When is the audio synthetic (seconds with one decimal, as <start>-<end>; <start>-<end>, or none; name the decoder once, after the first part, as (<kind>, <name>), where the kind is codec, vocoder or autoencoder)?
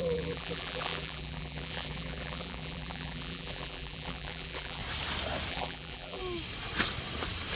0.0-4.8 (vocoder, BigVGAN v2); 5.5-6.2